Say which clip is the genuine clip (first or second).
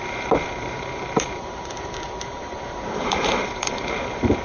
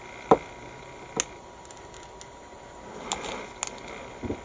second